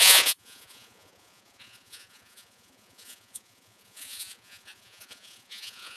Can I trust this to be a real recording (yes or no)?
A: no